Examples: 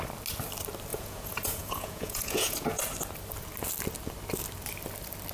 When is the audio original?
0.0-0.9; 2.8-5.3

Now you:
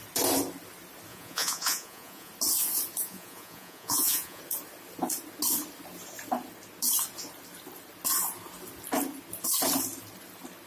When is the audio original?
0.0-1.1; 2.3-3.0; 4.4-10.7

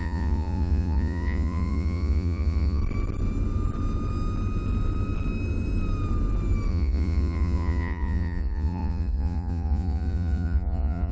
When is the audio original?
2.8-6.7